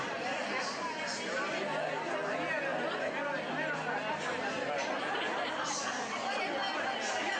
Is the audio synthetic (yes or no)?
no